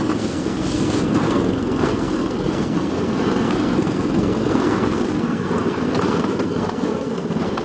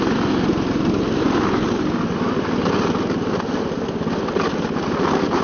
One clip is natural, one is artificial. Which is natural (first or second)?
second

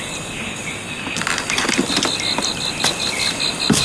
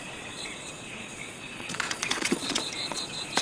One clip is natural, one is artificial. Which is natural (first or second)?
first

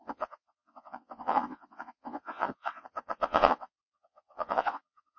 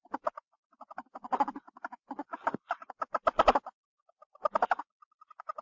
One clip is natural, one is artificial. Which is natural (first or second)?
second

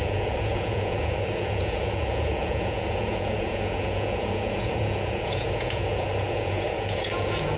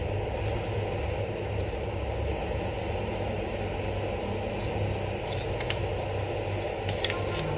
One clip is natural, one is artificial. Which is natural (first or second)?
second